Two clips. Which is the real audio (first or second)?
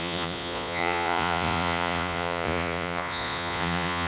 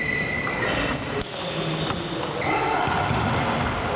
second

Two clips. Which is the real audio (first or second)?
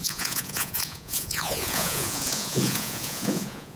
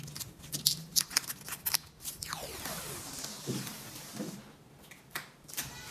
second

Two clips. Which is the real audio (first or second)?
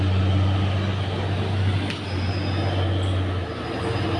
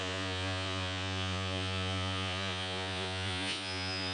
first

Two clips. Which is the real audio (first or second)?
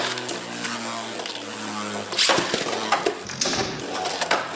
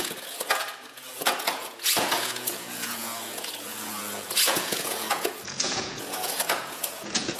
first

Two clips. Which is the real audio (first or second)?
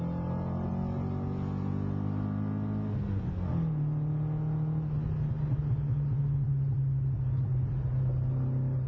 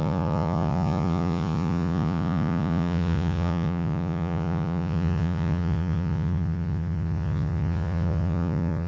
first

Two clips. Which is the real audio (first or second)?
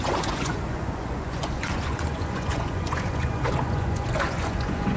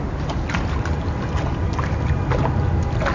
second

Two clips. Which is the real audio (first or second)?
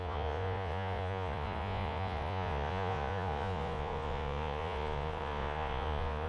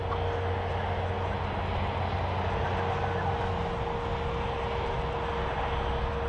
second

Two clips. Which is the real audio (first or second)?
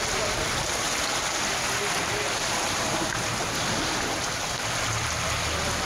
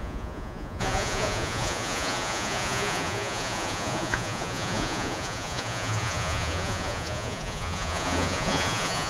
first